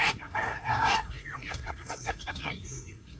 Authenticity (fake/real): fake